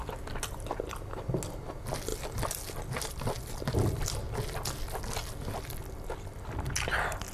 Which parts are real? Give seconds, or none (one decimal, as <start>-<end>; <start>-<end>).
0.0-2.1; 2.8-5.2; 5.8-7.3